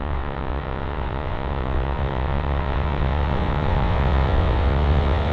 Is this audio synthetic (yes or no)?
yes